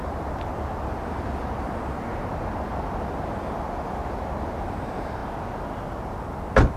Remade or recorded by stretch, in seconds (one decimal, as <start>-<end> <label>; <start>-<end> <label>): 0.0-6.8 recorded